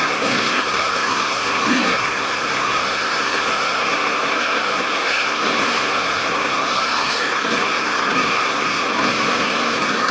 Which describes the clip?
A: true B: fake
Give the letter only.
B